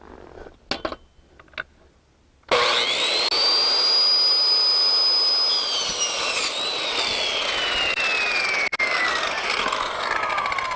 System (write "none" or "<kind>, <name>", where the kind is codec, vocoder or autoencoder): none